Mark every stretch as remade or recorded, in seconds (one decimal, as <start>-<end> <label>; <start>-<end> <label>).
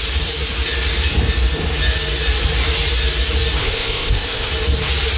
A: 0.0-3.6 recorded; 3.6-4.5 remade; 4.5-5.2 recorded